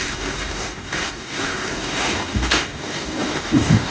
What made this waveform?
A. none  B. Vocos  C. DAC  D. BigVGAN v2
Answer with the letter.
C